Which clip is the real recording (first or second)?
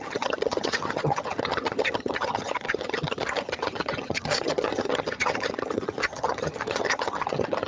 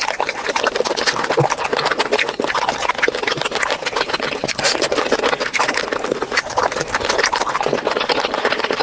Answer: second